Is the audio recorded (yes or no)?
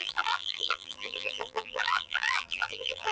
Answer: no